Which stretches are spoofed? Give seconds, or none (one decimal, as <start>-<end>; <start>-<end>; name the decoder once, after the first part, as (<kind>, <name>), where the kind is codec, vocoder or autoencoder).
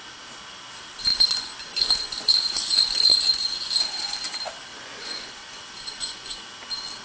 1.1-4.2 (vocoder, Vocos); 4.7-6.4